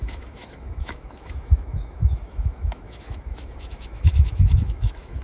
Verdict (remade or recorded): remade